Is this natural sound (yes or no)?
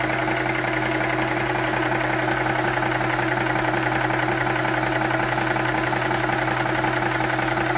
yes